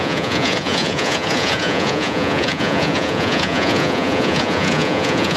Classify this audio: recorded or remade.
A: remade